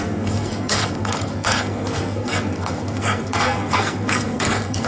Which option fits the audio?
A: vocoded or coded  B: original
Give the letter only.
A